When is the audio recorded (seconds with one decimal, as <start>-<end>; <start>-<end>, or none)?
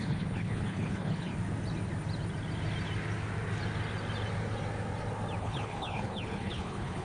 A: 1.3-5.4